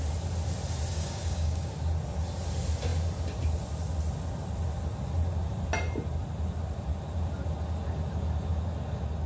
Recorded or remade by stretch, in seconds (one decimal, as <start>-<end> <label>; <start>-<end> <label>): 0.0-0.9 recorded; 0.9-1.7 remade; 1.7-9.3 recorded